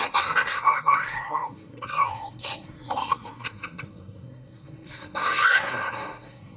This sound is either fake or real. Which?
fake